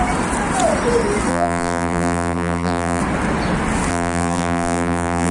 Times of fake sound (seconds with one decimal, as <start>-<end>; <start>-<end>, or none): 1.3-3.0; 3.9-5.3